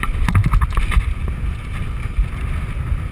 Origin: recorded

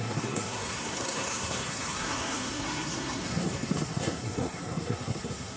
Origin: remade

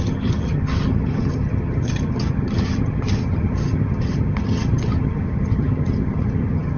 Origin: remade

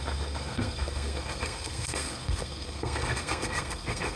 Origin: remade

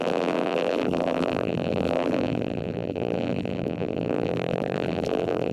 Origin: remade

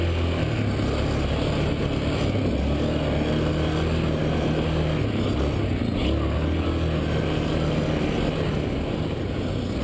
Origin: recorded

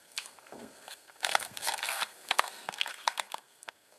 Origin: remade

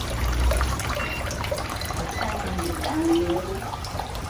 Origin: remade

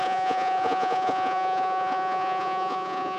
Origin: remade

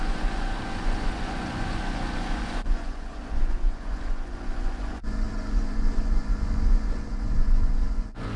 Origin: remade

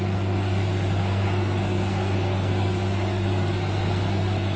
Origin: remade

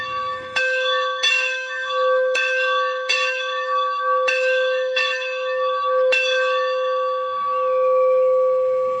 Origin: remade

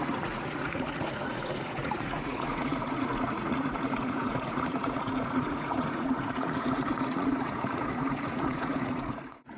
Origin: remade